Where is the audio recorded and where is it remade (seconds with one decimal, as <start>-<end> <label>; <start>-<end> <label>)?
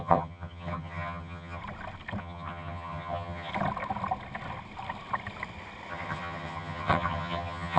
0.0-1.6 remade; 1.6-2.2 recorded; 2.2-3.5 remade; 3.5-5.9 recorded; 5.9-7.8 remade